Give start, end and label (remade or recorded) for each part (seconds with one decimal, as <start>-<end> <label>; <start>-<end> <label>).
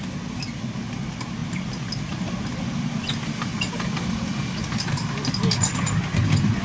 0.0-6.6 recorded